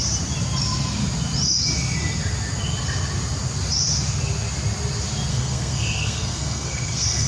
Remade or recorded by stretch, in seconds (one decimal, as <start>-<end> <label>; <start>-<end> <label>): 0.0-5.3 recorded; 5.3-7.3 remade